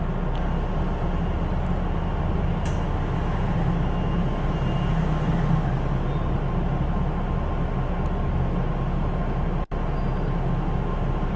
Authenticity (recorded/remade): recorded